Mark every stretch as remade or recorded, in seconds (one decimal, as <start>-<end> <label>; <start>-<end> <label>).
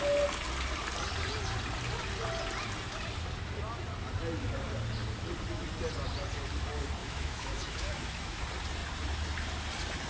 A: 0.0-7.0 recorded; 7.0-8.4 remade; 8.4-10.1 recorded